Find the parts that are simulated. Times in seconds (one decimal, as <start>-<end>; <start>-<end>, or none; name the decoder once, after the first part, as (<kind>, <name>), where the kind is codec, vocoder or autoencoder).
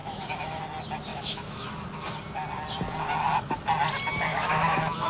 0.0-0.6 (autoencoder, DAC-VAE); 1.1-1.7; 4.3-5.1